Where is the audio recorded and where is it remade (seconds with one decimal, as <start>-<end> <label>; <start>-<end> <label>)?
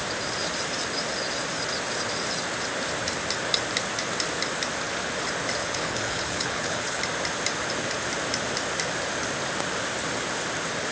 0.0-5.6 recorded; 5.6-7.0 remade; 7.0-10.9 recorded